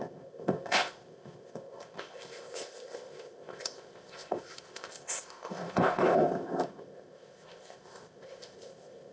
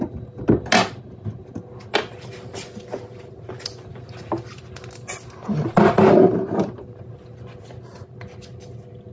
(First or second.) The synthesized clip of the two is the first